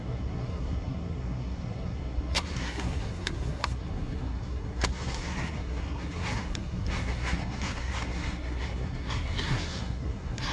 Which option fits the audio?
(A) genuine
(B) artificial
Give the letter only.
B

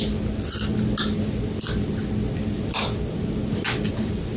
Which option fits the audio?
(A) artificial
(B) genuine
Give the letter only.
B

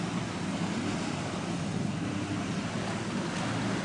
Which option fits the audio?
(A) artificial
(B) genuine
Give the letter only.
B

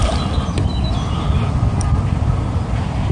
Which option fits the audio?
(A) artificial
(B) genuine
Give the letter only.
B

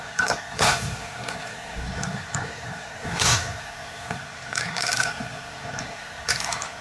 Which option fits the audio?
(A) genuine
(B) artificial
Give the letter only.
B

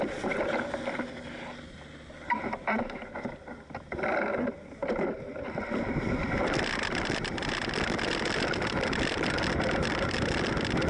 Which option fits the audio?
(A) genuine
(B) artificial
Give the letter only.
A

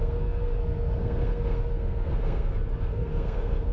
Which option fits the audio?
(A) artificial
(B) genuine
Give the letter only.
A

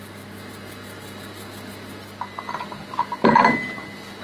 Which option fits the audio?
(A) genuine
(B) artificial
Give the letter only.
A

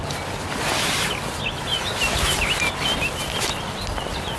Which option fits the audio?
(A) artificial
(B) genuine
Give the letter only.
B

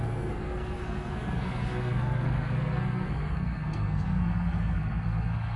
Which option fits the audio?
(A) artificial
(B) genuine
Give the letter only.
A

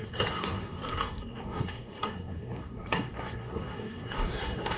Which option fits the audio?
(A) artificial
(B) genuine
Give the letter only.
A